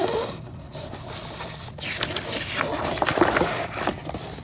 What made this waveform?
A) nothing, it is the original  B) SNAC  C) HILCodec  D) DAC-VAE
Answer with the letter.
A